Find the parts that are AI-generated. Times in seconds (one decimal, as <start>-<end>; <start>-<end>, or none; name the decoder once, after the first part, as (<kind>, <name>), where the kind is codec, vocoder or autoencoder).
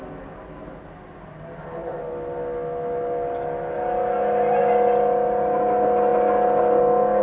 none